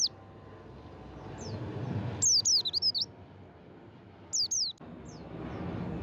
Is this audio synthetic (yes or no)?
no